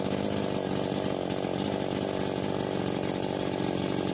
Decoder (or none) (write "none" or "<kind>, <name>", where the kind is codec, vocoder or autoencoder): none